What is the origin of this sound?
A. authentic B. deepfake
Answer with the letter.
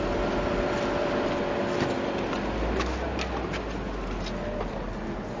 A